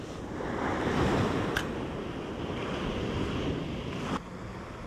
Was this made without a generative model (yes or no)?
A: yes